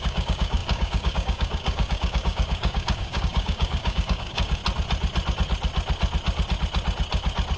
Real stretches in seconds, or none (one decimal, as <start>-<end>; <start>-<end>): 4.6-7.6